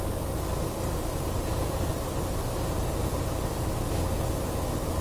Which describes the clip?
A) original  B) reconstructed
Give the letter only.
A